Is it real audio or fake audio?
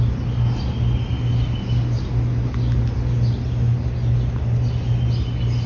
real